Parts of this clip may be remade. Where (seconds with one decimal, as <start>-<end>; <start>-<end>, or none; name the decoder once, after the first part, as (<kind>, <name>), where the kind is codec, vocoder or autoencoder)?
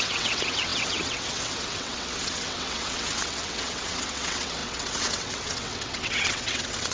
0.0-6.9 (vocoder, WaveNeXt)